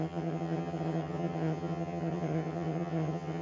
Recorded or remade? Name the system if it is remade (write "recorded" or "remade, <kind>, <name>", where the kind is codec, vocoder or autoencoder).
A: remade, vocoder, HiFi-GAN